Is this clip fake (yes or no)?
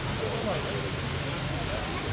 no